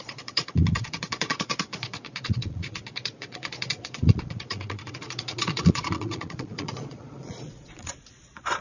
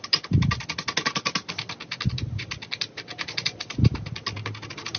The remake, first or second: first